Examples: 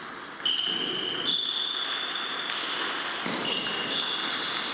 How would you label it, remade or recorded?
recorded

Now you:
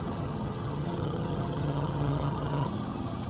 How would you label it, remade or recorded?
remade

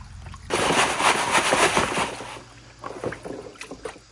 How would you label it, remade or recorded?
recorded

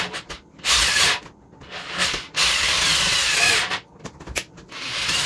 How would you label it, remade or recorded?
recorded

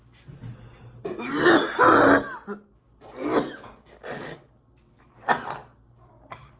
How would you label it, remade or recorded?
recorded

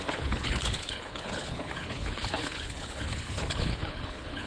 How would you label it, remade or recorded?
remade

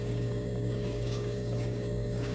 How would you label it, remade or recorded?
remade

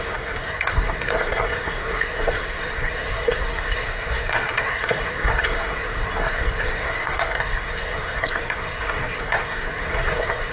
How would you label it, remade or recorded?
remade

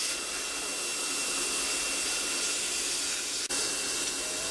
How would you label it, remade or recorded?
recorded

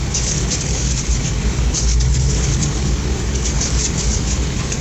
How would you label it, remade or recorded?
remade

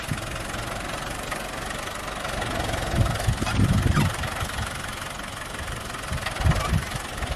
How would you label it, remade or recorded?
recorded